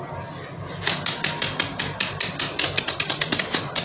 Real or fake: real